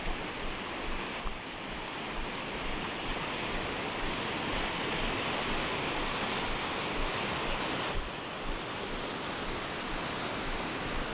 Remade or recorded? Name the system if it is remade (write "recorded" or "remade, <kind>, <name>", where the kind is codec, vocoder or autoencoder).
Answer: recorded